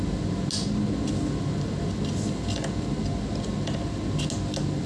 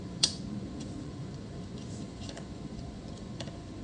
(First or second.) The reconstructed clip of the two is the second